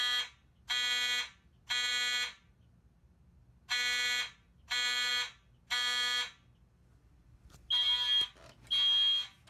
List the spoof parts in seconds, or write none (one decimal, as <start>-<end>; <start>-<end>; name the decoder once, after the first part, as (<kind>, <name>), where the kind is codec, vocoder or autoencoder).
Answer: none